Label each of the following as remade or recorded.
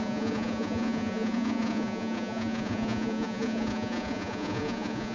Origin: remade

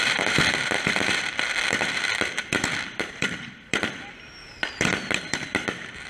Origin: remade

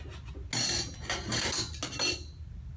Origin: recorded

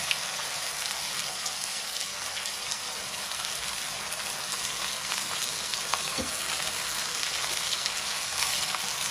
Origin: remade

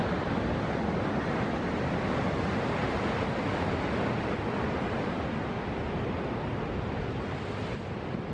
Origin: recorded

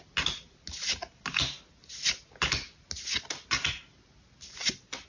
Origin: recorded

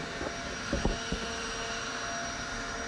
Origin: recorded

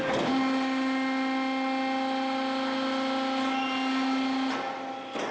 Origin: recorded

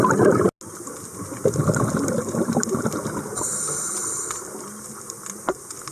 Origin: recorded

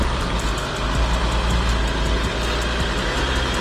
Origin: recorded